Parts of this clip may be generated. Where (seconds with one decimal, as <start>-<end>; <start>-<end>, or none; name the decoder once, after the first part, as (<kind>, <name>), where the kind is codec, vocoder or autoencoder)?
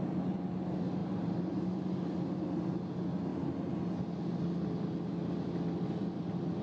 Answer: 1.0-2.1 (vocoder, BigVGAN v2)